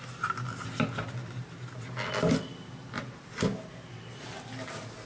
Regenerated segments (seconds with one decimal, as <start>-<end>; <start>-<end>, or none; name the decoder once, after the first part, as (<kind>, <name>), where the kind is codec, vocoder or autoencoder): none